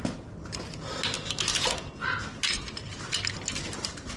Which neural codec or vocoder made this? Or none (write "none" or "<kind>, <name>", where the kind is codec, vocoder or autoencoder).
none